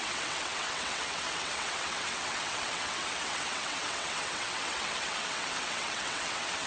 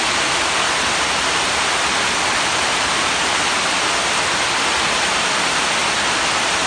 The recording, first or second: second